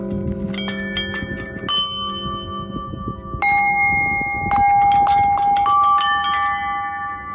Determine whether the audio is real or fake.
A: real